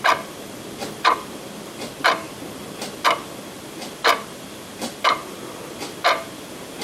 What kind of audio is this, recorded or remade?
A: recorded